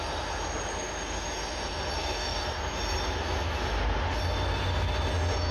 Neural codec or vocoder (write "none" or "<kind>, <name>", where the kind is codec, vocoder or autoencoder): none